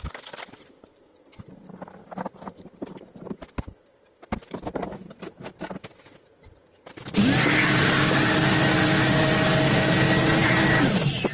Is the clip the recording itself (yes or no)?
yes